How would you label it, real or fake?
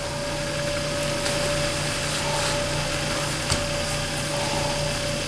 real